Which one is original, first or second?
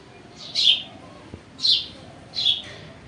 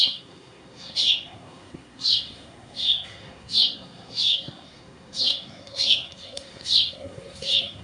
first